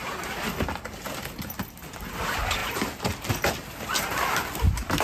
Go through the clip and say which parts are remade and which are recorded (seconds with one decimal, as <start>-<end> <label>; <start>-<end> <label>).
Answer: 0.0-5.0 recorded